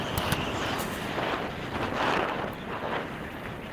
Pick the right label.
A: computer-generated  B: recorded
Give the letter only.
B